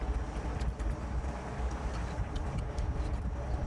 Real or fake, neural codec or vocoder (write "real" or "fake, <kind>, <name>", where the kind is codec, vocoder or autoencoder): real